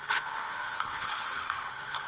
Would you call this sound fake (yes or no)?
yes